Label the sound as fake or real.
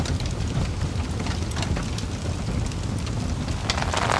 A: real